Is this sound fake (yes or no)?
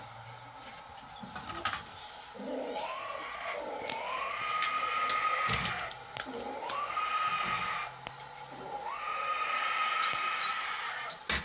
no